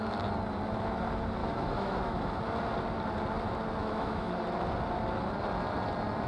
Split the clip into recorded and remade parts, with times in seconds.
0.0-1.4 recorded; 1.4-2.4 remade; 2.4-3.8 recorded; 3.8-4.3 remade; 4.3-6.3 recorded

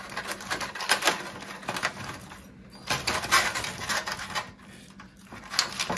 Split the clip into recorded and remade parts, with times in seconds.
0.0-6.0 recorded

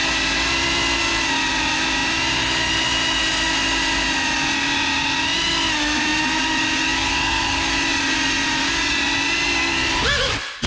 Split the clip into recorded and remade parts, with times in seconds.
0.0-10.7 recorded

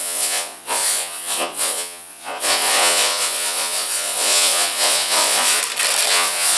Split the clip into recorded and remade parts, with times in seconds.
0.0-5.6 remade; 5.6-6.1 recorded; 6.1-6.6 remade

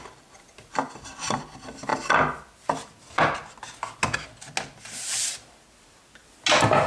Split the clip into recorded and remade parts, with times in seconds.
0.0-6.9 recorded

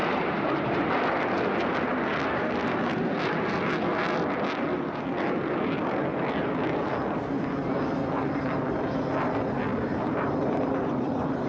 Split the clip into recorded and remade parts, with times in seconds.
0.0-0.9 remade; 0.9-9.7 recorded; 9.7-11.5 remade